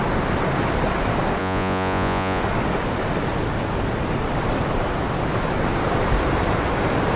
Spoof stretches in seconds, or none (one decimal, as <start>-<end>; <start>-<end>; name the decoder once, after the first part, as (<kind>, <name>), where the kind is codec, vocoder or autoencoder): 1.4-2.4 (vocoder, Vocos)